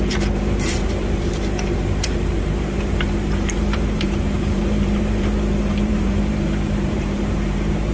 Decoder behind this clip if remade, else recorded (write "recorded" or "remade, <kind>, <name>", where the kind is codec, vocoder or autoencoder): remade, vocoder, BigVGAN v2